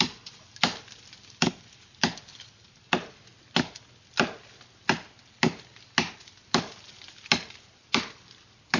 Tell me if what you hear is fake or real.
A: real